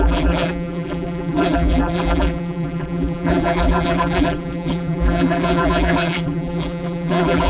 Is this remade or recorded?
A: remade